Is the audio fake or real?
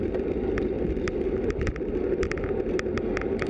real